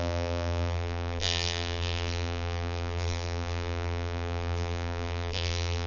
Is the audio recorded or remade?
remade